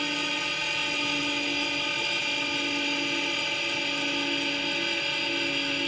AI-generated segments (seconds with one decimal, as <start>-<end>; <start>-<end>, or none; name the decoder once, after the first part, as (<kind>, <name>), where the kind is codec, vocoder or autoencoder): none